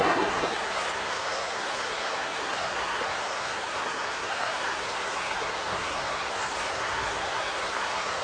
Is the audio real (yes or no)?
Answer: no